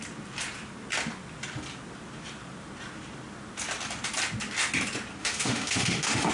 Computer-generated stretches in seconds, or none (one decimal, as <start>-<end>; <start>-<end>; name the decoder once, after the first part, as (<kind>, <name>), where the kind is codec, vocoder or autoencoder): 5.2-6.3 (autoencoder, DAC-VAE)